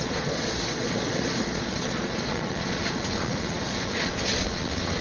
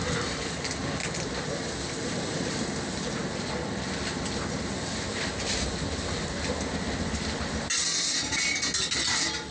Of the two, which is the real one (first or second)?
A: second